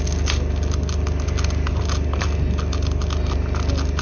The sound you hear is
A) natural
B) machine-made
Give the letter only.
A